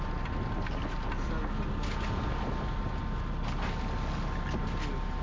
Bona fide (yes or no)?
yes